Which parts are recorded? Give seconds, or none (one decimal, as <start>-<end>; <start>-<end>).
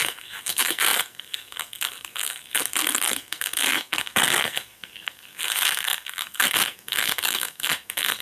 none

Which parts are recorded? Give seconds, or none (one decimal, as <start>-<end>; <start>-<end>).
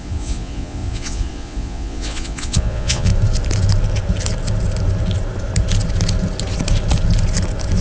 3.1-7.8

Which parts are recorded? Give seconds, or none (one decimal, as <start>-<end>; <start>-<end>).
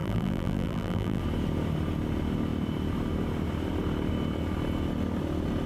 1.2-5.7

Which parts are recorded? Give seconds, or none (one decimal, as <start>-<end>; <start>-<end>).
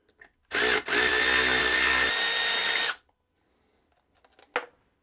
0.0-5.0